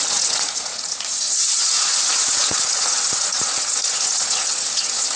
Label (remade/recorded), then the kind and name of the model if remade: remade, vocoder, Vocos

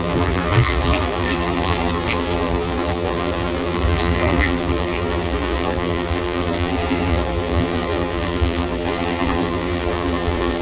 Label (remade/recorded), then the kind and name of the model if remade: remade, vocoder, BigVGAN v2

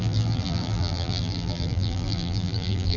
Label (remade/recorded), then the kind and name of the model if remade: remade, vocoder, BigVGAN v2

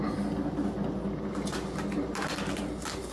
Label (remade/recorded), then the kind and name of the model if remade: recorded